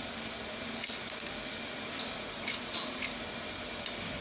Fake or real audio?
real